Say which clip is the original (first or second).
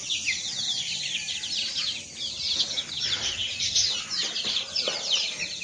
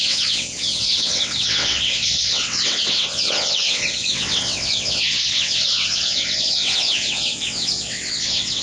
first